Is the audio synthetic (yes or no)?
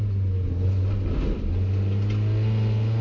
no